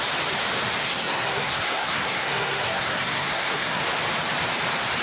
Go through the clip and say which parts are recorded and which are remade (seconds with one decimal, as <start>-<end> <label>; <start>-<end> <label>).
0.0-0.8 recorded; 0.8-3.8 remade; 3.8-5.0 recorded